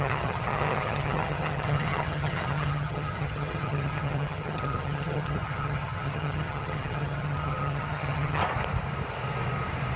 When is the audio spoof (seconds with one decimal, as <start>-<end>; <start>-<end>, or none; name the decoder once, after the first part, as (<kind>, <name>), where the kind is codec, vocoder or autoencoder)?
0.0-8.4 (vocoder, HiFi-GAN)